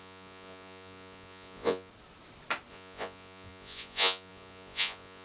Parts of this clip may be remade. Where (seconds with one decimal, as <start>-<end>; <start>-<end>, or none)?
0.0-1.9; 2.7-5.2